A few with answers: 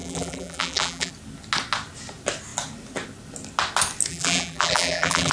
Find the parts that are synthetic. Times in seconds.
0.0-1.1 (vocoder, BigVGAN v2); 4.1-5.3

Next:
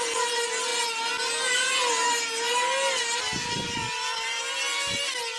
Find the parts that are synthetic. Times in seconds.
3.4-4.4 (vocoder, BigVGAN v2)

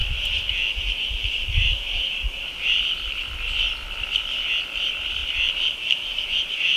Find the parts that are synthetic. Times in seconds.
0.0-6.8 (vocoder, BigVGAN v2)